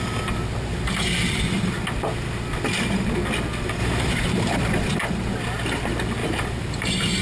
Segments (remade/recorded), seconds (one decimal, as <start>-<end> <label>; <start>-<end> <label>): 0.0-0.7 recorded; 0.7-1.4 remade; 1.4-3.8 recorded; 3.8-5.0 remade; 5.0-6.2 recorded; 6.2-7.2 remade